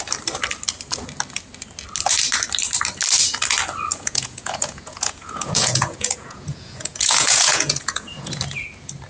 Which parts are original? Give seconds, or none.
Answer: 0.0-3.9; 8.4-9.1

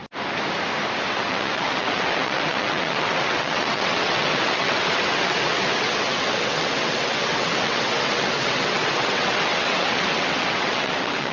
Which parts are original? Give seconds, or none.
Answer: 0.0-1.1

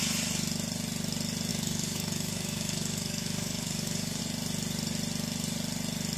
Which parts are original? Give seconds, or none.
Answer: 0.0-1.5; 4.2-6.2

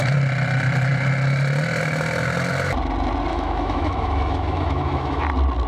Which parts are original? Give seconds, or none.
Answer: 0.0-3.3; 5.2-5.7

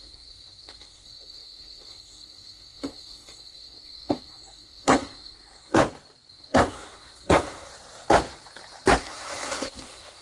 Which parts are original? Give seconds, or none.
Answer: 5.8-6.3; 7.7-9.0

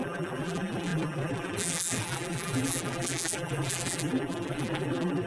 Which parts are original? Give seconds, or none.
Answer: none

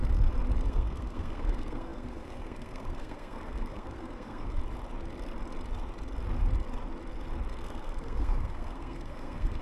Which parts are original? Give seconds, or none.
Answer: 0.0-0.7; 4.6-7.6

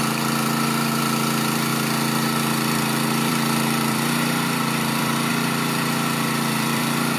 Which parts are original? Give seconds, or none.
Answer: none